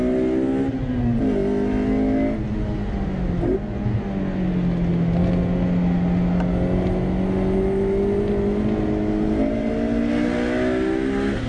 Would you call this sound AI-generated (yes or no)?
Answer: no